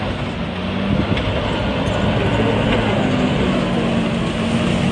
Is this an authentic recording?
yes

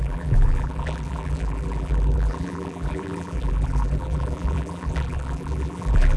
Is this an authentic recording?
no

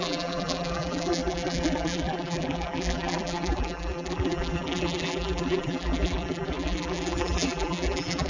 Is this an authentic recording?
no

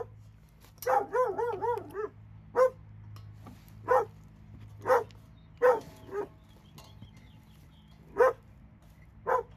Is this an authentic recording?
yes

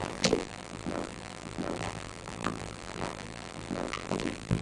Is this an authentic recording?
no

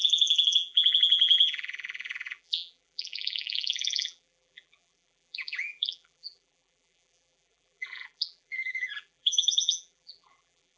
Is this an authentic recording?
no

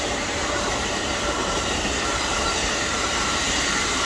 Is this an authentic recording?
no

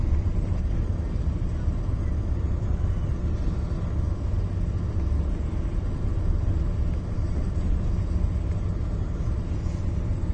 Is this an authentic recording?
yes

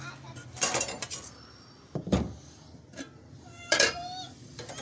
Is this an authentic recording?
no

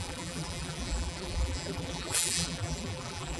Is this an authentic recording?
no